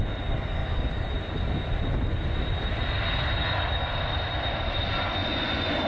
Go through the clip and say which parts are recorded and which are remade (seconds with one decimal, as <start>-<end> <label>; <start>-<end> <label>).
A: 0.0-5.2 recorded; 5.2-5.9 remade